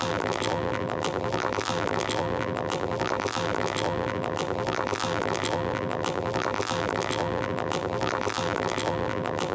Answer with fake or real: fake